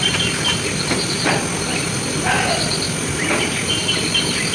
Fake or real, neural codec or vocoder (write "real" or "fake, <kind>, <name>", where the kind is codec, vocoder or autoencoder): real